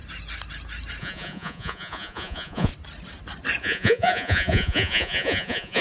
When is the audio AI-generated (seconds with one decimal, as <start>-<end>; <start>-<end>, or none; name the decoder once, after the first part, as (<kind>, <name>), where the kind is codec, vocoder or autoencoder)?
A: 1.0-2.7 (vocoder, Vocos); 3.6-5.8